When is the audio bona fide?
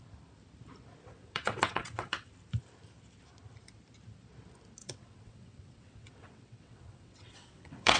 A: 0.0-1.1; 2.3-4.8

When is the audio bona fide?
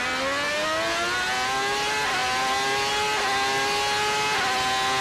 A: 0.0-5.0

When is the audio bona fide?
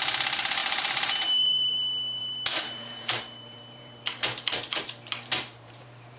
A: none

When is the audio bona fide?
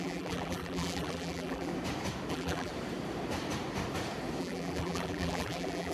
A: 1.7-2.3; 2.7-4.4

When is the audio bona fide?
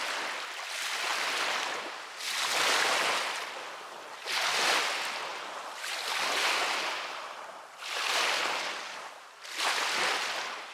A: 0.0-10.7